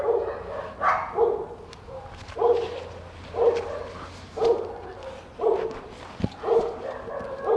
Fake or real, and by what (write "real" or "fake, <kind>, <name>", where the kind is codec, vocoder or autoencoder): real